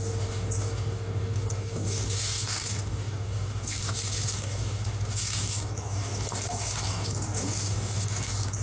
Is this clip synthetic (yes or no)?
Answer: yes